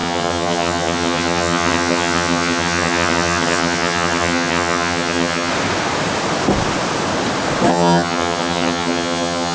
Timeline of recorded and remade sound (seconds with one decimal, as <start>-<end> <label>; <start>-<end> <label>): 0.0-5.5 remade; 5.5-7.7 recorded; 7.7-9.5 remade